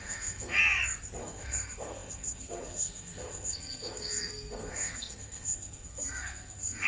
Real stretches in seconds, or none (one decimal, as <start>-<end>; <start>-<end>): 0.6-1.2